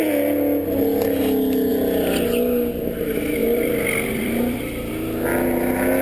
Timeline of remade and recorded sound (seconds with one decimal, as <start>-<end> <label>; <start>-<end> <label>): 0.0-3.4 recorded; 3.4-4.9 remade; 4.9-6.0 recorded